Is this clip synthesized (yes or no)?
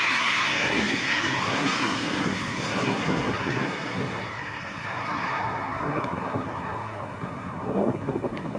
yes